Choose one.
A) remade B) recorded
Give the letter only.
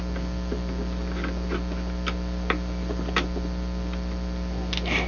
B